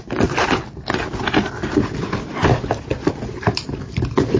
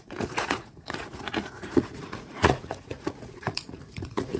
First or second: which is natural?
first